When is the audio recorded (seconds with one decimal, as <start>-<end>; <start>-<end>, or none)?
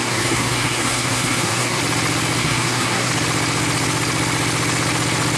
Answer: 1.8-2.4; 3.1-5.4